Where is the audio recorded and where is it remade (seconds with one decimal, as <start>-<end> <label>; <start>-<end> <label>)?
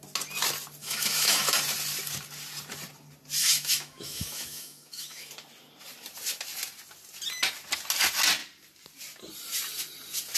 0.0-0.8 recorded; 0.8-1.6 remade; 1.6-3.4 recorded; 3.4-5.3 remade; 5.3-10.4 recorded